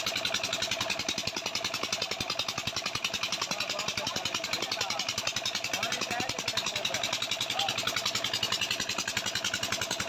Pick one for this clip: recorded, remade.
recorded